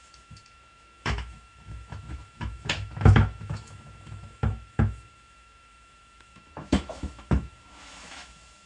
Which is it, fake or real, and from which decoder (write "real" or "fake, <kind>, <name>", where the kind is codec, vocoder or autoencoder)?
fake, autoencoder, DAC-VAE